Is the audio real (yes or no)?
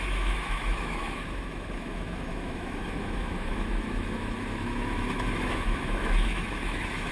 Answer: no